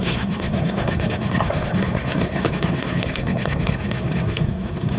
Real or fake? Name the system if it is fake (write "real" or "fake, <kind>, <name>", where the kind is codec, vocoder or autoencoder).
fake, codec, SNAC